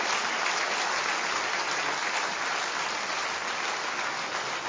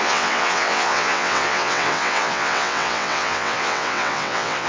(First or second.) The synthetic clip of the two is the second